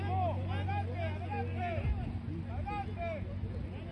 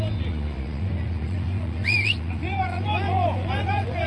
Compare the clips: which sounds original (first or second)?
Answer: first